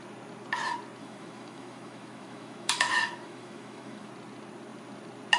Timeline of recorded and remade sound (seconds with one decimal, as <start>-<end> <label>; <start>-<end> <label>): 0.0-1.0 recorded; 1.0-4.1 remade; 4.1-5.4 recorded